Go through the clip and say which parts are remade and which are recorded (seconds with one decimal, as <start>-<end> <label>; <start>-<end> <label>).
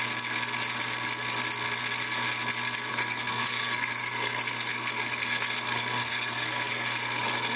0.0-2.9 recorded; 2.9-7.6 remade